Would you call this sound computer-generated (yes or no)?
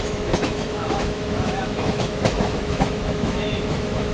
yes